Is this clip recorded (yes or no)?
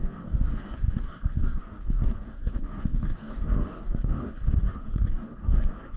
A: no